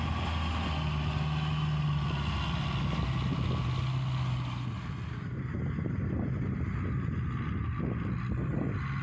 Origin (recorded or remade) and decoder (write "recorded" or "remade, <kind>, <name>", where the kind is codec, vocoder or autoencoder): recorded